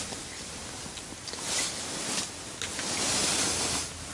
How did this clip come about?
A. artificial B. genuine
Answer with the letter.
B